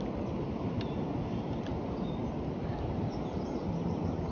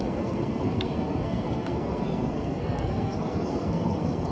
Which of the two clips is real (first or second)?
first